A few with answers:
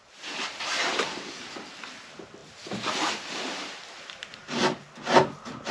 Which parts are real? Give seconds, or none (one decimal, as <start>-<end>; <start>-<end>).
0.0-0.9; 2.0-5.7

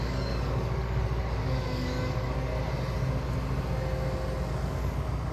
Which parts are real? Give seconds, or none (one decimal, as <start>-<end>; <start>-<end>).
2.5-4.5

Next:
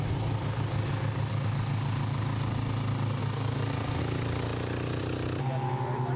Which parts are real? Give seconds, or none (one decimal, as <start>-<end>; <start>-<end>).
0.0-3.2; 4.0-6.2